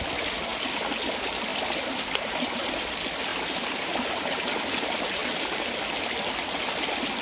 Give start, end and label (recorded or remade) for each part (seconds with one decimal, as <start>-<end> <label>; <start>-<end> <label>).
0.0-3.3 recorded; 3.3-4.2 remade; 4.2-7.2 recorded